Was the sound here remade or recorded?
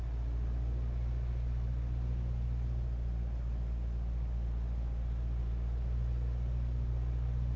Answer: recorded